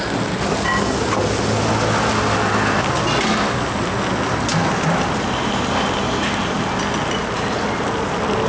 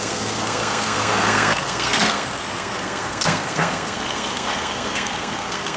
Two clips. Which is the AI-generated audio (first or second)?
second